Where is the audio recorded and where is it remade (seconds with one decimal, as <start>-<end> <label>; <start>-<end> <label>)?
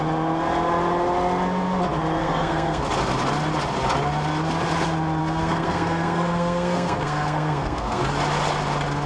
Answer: 0.0-2.2 recorded; 2.2-2.8 remade; 2.8-5.2 recorded; 5.2-8.0 remade; 8.0-9.1 recorded